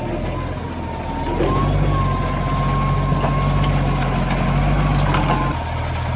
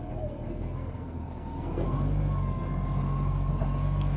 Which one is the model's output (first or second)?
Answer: second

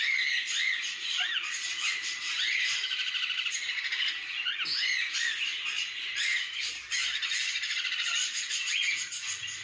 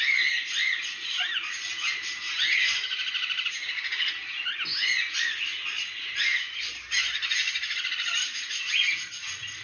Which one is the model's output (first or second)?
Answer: first